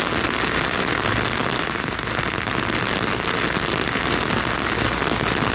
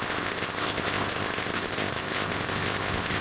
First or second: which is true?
first